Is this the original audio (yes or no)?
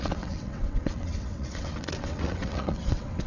no